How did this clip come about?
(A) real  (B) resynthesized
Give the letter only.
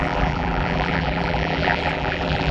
B